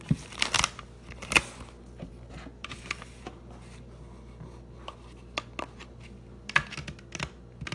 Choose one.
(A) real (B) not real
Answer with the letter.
A